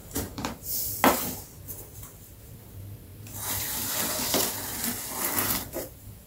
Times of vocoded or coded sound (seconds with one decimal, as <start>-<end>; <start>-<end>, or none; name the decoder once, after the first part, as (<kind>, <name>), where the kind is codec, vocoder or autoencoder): 2.4-3.1 (vocoder, BigVGAN v2)